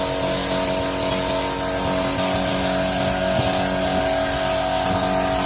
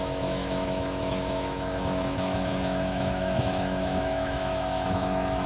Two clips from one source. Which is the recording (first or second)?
first